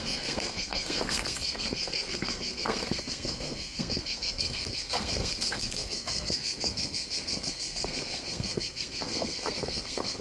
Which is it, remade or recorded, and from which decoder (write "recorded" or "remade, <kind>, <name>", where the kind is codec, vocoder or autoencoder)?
remade, codec, SNAC